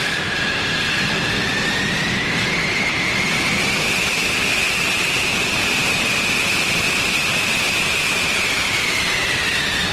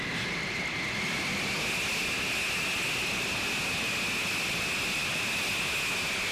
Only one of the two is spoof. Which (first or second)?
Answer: first